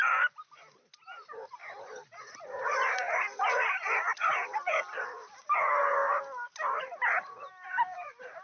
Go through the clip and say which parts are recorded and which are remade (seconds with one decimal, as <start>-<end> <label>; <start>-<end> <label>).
0.0-8.4 recorded